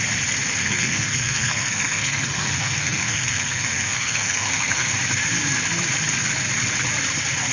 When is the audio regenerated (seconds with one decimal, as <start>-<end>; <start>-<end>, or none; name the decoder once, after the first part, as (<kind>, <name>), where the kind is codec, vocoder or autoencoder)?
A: 0.6-4.9 (codec, SNAC)